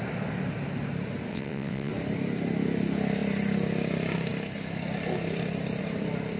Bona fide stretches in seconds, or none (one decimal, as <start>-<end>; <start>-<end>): 0.0-1.3; 1.9-6.4